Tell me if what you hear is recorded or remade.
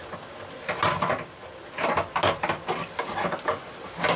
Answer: recorded